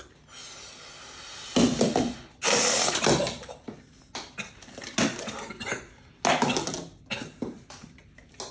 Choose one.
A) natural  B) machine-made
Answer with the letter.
A